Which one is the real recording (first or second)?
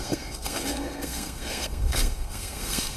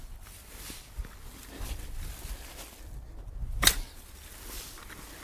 second